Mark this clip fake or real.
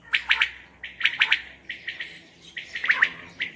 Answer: real